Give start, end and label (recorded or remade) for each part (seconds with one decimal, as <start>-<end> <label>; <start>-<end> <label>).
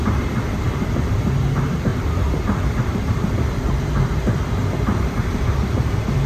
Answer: 0.0-6.3 remade